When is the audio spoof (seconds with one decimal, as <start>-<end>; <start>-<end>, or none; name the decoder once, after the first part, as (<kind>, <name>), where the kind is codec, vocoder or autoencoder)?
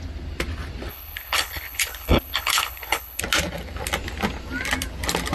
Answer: 0.9-3.2 (codec, HILCodec)